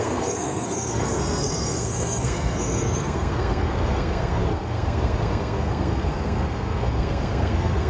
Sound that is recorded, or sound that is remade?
remade